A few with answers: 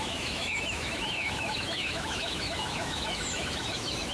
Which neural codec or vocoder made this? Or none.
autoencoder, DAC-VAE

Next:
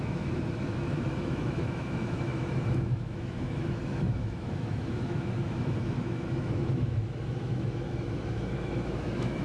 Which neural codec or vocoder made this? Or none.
autoencoder, DAC-VAE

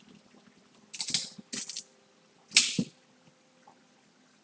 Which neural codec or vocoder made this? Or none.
none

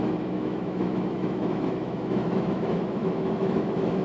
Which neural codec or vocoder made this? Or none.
autoencoder, DAC-VAE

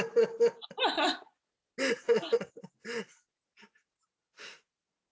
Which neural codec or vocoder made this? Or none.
none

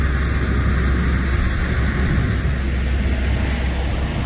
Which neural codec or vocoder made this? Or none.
none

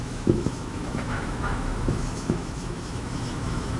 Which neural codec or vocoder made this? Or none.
autoencoder, DAC-VAE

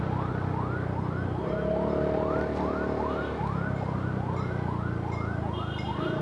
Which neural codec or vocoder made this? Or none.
none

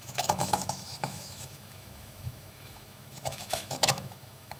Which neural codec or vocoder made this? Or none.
autoencoder, DAC-VAE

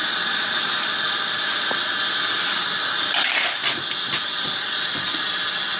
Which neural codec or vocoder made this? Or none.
none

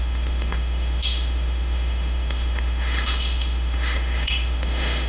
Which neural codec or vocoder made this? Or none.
autoencoder, DAC-VAE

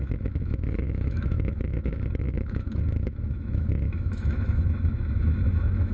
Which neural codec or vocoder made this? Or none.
autoencoder, DAC-VAE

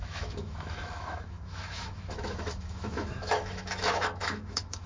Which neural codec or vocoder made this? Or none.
autoencoder, DAC-VAE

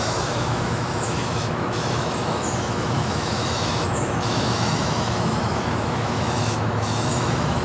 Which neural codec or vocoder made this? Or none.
autoencoder, DAC-VAE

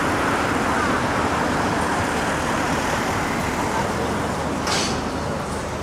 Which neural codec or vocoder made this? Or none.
none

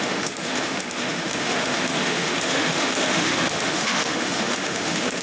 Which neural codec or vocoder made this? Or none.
autoencoder, DAC-VAE